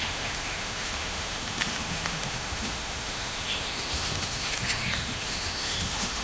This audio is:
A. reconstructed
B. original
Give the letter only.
A